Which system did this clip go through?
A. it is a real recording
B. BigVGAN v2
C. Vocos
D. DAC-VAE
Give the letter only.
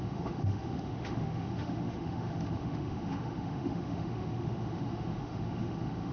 D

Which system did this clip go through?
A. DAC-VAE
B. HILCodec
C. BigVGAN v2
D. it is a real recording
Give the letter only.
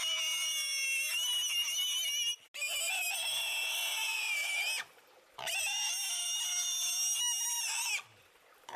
D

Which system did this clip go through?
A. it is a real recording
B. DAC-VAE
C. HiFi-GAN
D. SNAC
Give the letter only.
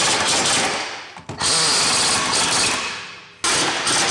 A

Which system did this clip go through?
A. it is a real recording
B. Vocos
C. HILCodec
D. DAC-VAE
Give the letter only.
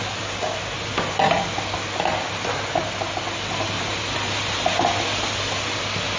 A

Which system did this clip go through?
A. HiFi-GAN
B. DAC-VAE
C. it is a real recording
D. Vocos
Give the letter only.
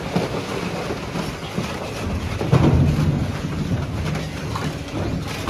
C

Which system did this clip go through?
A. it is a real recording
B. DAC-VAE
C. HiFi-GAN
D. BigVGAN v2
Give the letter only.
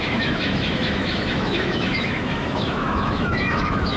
B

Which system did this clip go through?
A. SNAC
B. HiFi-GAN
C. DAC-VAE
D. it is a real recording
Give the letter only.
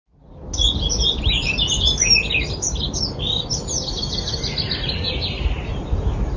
D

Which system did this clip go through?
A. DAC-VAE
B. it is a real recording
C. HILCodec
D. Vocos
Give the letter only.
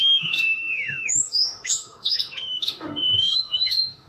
A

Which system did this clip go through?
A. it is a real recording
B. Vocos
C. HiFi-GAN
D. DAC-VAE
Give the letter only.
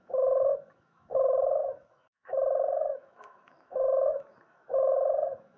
D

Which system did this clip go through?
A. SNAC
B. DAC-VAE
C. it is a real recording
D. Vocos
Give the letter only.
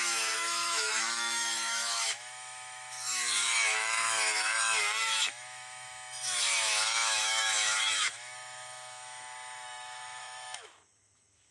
B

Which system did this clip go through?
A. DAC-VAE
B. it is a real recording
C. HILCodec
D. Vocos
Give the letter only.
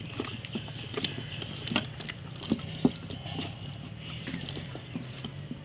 B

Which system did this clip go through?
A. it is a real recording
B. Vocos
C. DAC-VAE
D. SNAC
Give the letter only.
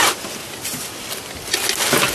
A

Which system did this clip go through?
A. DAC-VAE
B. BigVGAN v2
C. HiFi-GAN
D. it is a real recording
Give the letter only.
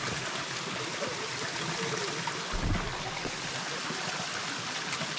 D